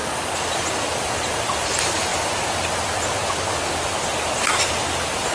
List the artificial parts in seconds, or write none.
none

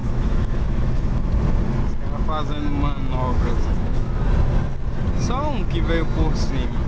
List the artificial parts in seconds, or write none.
0.0-1.1 (autoencoder, DAC-VAE); 3.3-4.2

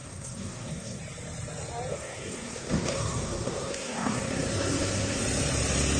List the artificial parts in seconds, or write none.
0.0-1.0 (codec, SNAC); 1.9-5.2

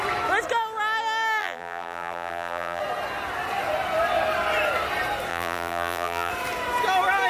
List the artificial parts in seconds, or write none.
1.4-2.8 (vocoder, BigVGAN v2); 5.3-6.3